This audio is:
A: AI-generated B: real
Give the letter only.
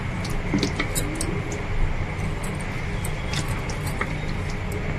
B